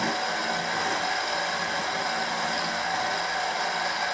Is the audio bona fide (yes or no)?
yes